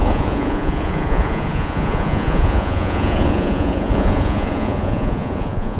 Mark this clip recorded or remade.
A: remade